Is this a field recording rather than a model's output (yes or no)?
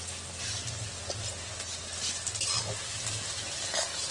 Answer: yes